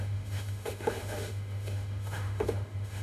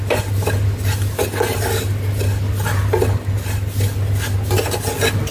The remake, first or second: first